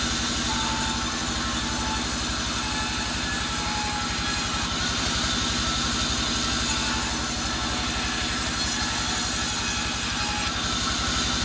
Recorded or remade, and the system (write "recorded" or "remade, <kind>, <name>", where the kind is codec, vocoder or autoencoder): recorded